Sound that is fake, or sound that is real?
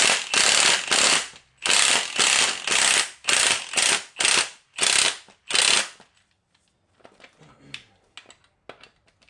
real